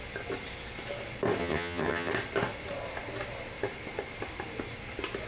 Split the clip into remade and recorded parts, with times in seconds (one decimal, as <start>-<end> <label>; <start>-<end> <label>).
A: 0.0-1.4 recorded; 1.4-2.1 remade; 2.1-5.3 recorded